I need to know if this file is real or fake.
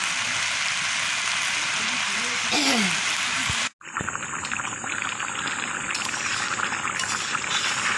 real